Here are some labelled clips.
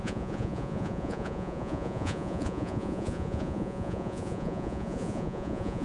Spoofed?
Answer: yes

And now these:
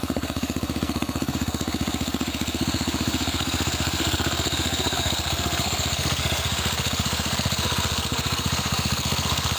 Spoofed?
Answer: yes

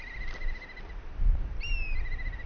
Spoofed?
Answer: no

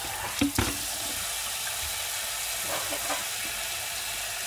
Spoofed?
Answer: no